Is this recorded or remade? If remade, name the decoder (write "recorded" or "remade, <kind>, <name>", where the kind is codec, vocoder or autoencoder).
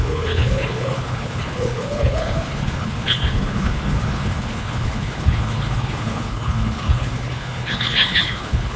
remade, codec, HILCodec